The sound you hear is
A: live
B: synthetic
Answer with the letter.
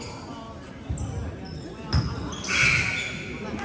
A